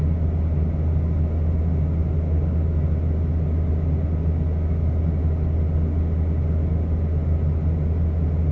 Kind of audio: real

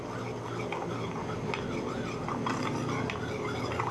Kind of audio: real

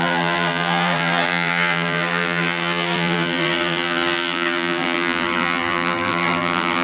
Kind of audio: fake